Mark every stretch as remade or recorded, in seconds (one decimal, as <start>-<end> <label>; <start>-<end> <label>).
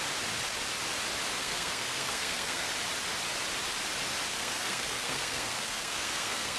0.0-1.4 recorded; 1.4-2.7 remade; 2.7-4.3 recorded; 4.3-6.6 remade